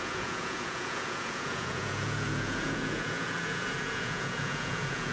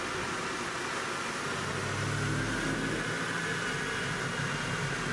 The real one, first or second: second